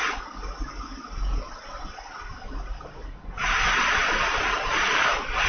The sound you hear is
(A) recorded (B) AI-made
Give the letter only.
A